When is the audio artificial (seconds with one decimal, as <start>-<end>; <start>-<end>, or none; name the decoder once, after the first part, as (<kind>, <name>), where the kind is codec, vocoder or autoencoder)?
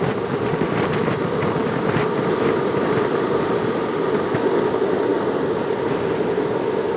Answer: none